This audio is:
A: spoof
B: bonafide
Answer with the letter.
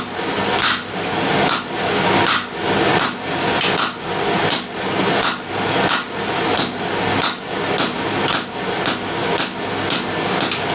B